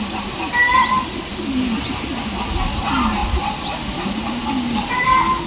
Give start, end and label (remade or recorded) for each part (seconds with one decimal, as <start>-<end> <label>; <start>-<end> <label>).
0.0-3.2 recorded; 3.2-4.3 remade; 4.3-5.5 recorded

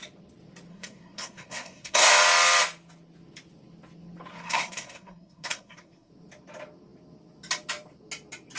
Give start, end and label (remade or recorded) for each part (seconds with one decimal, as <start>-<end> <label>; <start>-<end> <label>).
0.0-0.7 recorded; 0.7-2.1 remade; 2.1-4.3 recorded; 4.3-6.1 remade; 6.1-8.6 recorded